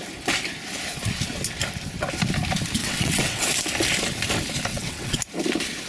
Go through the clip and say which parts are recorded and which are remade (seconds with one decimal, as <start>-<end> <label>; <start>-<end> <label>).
0.0-2.8 recorded; 2.8-3.5 remade; 3.5-4.7 recorded; 4.7-5.2 remade; 5.2-5.9 recorded